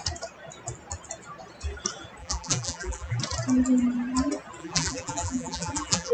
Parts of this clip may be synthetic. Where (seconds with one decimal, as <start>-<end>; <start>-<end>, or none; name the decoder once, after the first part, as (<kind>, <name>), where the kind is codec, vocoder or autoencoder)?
2.2-3.2 (vocoder, BigVGAN v2); 4.6-6.1